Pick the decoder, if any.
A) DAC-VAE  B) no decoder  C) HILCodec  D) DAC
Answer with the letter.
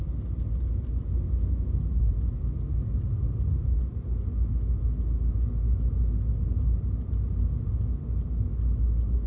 B